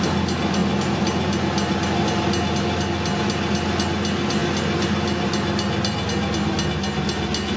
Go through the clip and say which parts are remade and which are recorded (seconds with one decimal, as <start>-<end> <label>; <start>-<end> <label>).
0.0-7.6 recorded